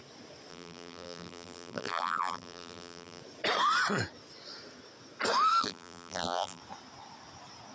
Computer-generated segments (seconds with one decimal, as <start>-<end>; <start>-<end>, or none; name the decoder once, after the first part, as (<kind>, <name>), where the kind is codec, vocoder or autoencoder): 0.5-3.2 (vocoder, BigVGAN v2); 5.6-6.6